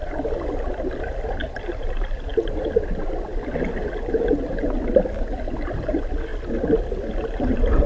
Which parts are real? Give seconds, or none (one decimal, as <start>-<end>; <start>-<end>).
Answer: 0.0-7.9